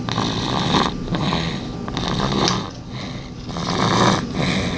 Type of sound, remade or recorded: recorded